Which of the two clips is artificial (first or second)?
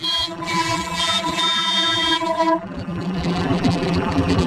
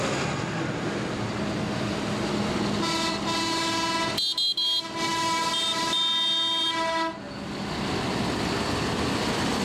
first